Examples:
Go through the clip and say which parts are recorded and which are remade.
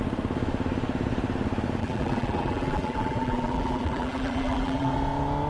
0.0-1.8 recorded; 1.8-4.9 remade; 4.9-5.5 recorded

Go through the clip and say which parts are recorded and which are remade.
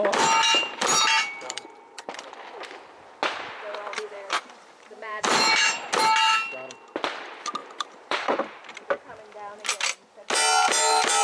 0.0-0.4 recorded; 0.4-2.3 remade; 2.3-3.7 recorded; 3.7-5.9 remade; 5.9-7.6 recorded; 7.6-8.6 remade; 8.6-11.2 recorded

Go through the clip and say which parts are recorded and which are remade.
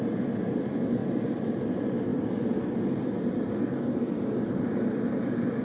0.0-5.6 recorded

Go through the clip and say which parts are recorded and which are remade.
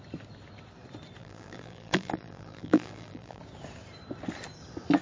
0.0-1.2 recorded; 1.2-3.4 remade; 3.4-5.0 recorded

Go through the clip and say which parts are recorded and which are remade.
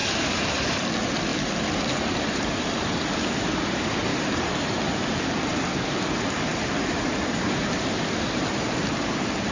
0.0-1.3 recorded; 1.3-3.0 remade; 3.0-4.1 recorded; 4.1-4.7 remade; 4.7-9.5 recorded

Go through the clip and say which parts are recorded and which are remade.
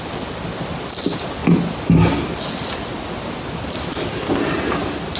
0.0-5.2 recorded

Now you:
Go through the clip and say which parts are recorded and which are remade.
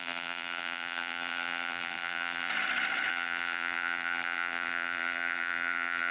0.0-2.5 remade; 2.5-3.1 recorded; 3.1-6.1 remade